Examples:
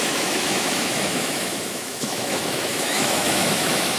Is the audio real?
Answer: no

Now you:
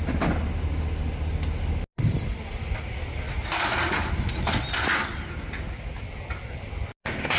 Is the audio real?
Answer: yes